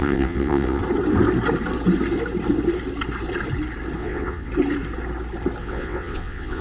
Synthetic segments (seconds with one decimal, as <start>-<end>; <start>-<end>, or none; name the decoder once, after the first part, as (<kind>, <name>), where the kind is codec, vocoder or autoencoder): 0.0-0.8 (vocoder, WaveNeXt); 4.0-4.5; 5.6-6.6